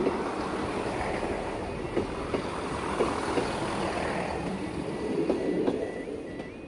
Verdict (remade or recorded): recorded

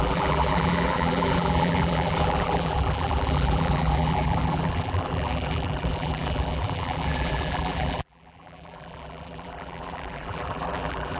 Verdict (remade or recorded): remade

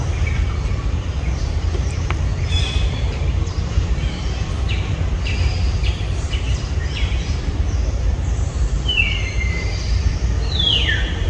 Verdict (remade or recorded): remade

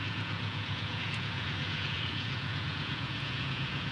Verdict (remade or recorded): remade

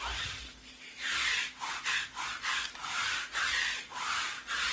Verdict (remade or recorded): recorded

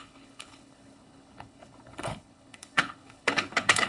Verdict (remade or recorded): remade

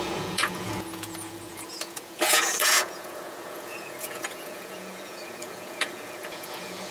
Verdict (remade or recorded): remade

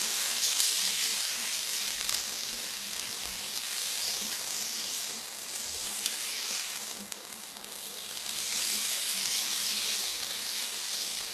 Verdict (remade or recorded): remade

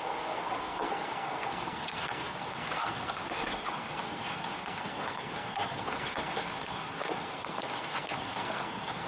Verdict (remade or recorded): remade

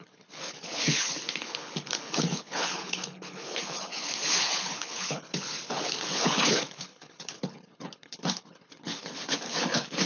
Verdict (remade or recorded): remade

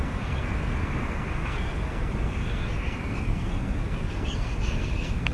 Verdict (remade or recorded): remade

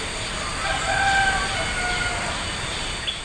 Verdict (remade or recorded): recorded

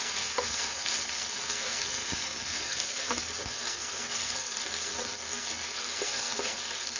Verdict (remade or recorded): remade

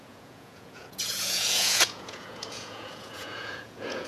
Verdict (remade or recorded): remade